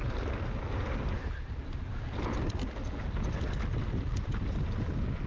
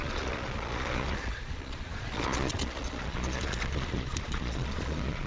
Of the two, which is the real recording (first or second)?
first